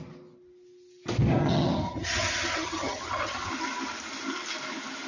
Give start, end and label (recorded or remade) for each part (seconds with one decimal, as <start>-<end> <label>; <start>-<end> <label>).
0.0-1.4 recorded; 1.4-3.5 remade; 3.5-5.1 recorded